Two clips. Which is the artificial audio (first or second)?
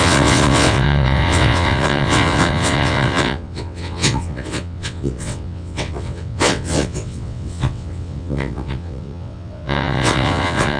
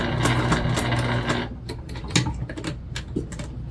first